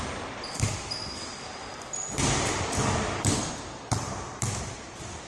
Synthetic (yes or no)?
no